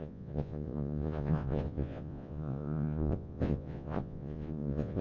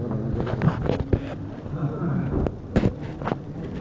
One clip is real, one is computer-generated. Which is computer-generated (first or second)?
first